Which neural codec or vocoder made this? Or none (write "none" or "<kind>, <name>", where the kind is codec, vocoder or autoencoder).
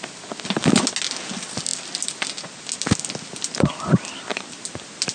none